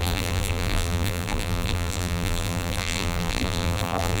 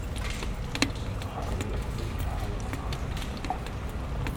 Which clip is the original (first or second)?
second